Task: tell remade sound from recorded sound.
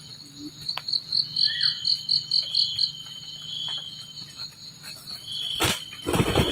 recorded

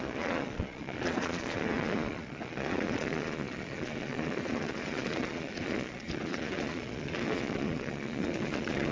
remade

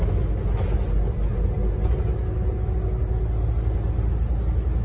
recorded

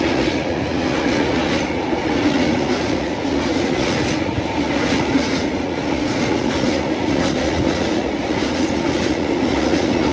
remade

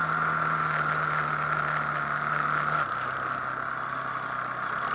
recorded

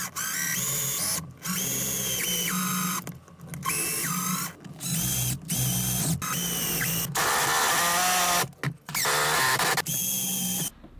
recorded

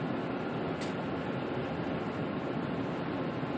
recorded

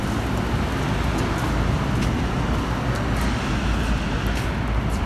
recorded